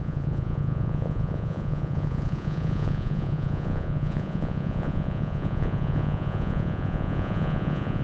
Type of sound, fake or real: fake